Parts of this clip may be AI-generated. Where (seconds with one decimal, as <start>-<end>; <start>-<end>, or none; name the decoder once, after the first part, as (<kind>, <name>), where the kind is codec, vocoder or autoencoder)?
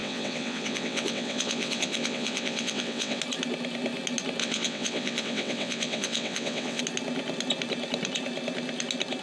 0.0-3.2 (vocoder, WaveNeXt); 4.4-6.8